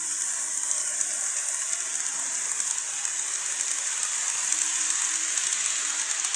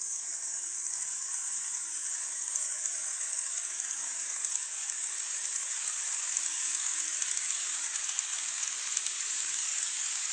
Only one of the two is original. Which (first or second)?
first